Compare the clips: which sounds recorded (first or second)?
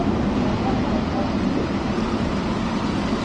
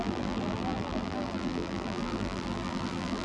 first